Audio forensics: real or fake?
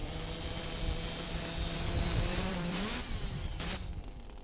fake